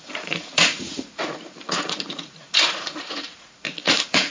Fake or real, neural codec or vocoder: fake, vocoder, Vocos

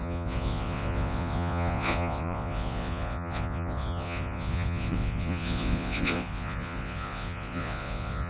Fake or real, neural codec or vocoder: fake, vocoder, Vocos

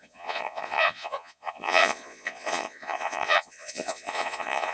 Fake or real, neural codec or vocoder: fake, vocoder, Vocos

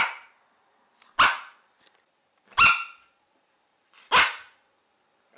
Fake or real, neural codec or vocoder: real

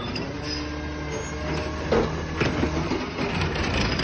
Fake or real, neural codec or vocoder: real